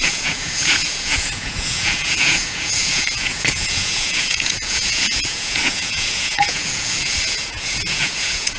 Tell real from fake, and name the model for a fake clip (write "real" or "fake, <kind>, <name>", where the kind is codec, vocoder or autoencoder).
fake, vocoder, Vocos